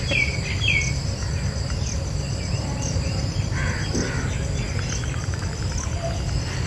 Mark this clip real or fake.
real